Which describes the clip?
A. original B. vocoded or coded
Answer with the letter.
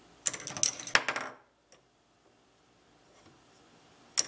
A